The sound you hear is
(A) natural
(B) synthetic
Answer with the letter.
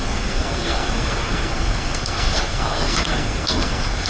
B